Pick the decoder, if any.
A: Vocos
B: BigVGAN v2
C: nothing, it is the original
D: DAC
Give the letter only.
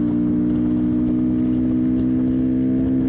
C